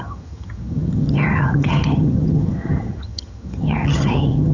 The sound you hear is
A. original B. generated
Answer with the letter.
B